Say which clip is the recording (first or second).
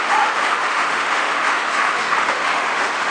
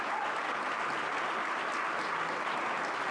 second